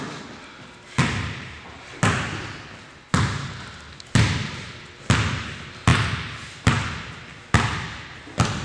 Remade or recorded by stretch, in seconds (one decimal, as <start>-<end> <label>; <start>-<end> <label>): 0.0-8.6 recorded